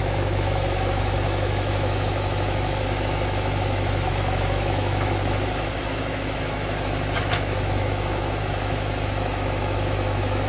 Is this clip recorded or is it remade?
remade